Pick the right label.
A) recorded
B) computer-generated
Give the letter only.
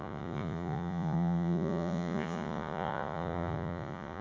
B